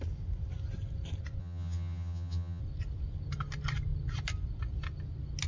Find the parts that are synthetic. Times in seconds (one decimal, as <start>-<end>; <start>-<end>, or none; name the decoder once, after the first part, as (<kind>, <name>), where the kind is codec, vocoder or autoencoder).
1.4-2.6 (vocoder, HiFi-GAN)